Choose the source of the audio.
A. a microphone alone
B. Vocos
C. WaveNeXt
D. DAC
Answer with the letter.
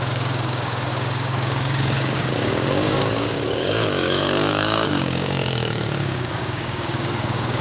D